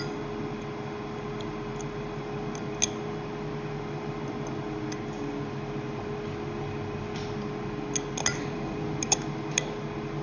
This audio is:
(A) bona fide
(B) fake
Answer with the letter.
A